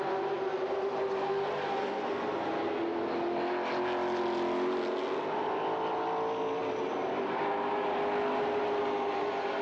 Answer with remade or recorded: recorded